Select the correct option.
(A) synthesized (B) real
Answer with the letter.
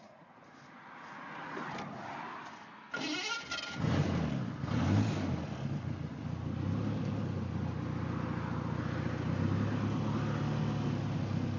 B